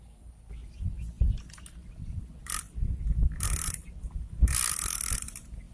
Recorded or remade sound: recorded